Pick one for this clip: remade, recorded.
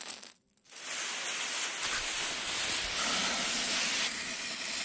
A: recorded